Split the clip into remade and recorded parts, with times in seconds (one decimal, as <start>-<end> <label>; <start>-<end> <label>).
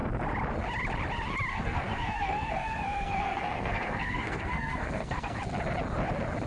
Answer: 0.0-1.5 recorded; 1.5-5.4 remade; 5.4-6.5 recorded